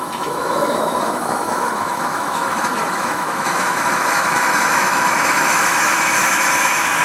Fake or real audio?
fake